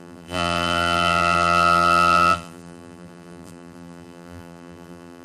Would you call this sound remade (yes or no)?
yes